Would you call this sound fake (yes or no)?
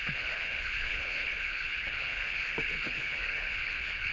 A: yes